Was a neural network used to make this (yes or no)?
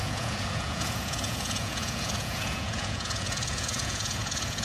yes